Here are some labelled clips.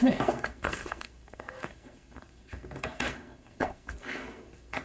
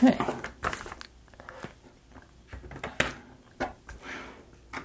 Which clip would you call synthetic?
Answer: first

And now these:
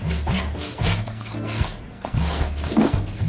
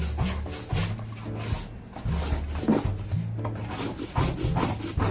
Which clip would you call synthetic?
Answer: first